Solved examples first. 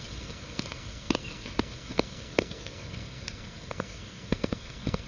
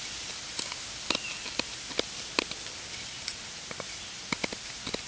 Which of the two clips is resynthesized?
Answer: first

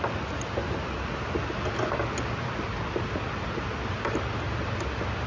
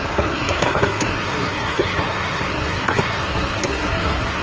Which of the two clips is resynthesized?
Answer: second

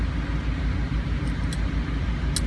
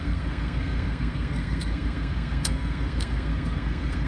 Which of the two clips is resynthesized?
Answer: second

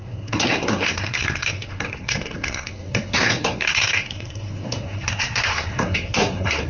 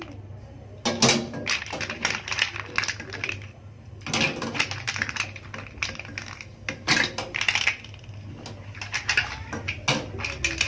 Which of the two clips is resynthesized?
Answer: first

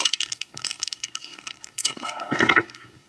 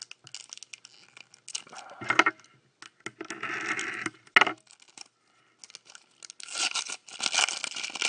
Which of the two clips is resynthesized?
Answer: first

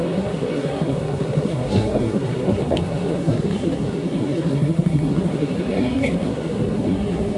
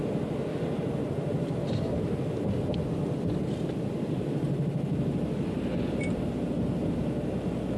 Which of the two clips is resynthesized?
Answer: first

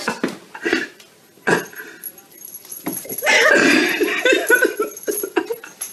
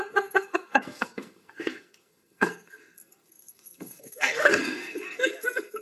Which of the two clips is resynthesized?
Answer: second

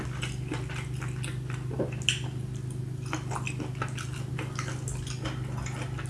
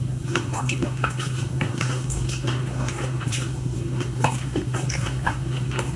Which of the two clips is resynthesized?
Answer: second